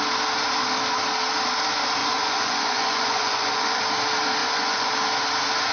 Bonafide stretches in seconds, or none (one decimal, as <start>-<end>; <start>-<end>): 0.0-2.0; 3.8-4.4; 4.9-5.7